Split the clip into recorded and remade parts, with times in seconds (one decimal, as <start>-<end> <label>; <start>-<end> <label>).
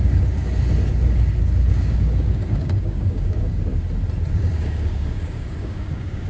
0.0-0.4 remade; 0.4-1.4 recorded; 1.4-3.7 remade; 3.7-4.3 recorded; 4.3-6.3 remade